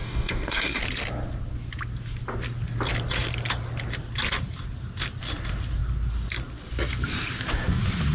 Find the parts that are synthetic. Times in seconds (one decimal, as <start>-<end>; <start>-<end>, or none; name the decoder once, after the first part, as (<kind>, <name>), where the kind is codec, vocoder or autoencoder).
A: 0.0-0.8 (codec, DAC)